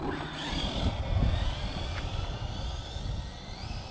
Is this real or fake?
real